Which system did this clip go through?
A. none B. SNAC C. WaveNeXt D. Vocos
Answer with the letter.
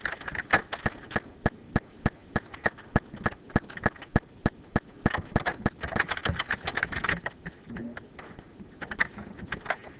A